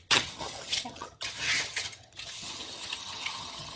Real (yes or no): no